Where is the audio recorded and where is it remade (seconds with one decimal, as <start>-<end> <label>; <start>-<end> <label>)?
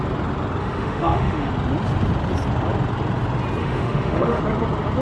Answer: 0.0-0.6 recorded; 0.6-1.5 remade; 1.5-3.6 recorded; 3.6-4.4 remade; 4.4-5.0 recorded